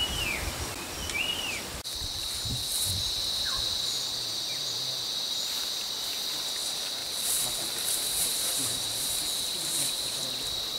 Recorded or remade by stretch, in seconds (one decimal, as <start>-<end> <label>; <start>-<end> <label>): 0.0-7.0 recorded; 7.0-10.3 remade; 10.3-10.8 recorded